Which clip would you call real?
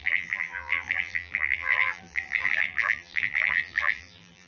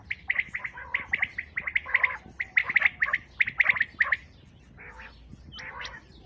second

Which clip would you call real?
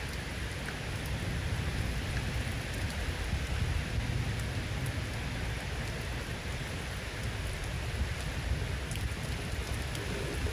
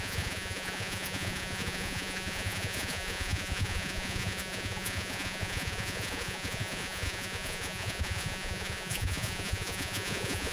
first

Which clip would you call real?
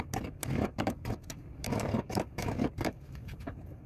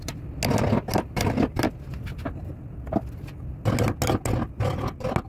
second